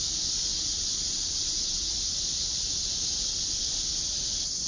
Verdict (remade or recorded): recorded